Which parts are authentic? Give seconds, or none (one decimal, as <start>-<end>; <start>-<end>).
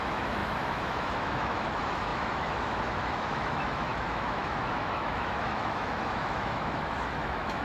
none